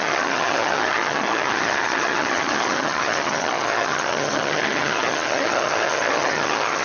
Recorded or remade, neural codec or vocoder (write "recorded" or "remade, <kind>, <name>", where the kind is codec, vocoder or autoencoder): remade, vocoder, HiFi-GAN